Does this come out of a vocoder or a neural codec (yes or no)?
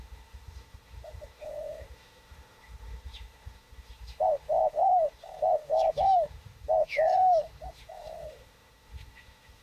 yes